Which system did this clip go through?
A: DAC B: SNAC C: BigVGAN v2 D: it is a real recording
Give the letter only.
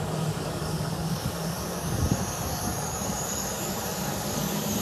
A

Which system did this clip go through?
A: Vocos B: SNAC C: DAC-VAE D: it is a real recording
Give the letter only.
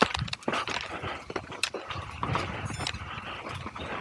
D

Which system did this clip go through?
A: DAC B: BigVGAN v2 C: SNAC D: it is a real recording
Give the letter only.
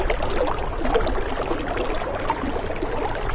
D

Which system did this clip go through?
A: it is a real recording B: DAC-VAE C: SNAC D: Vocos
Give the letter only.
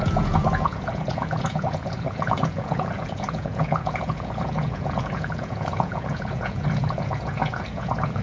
D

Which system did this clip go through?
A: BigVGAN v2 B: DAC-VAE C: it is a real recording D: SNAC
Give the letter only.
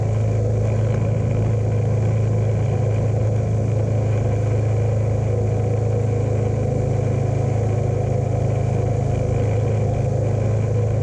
C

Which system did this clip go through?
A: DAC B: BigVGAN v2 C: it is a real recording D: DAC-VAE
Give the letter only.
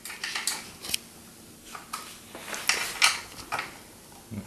C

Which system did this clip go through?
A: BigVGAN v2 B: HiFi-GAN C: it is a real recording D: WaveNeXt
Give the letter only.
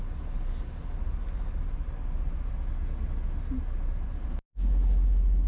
C